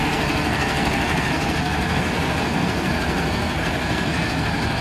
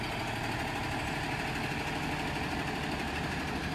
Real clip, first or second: second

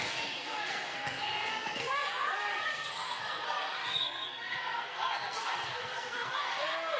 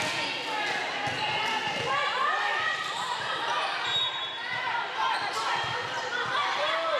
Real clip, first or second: second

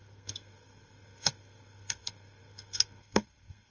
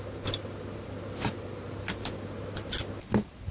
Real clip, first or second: second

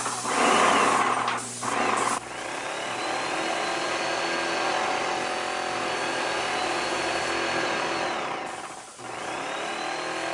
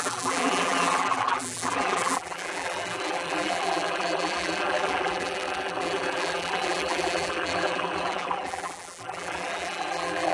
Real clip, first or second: first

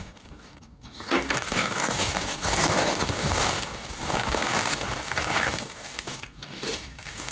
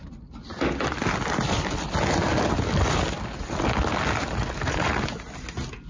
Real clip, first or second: second